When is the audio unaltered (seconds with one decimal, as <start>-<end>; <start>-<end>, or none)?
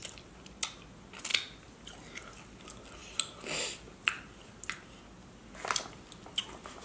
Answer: 0.0-6.8